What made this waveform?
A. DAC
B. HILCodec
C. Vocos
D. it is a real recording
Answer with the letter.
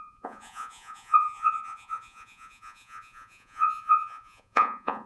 C